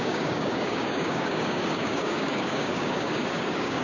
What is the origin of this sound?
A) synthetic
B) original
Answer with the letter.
A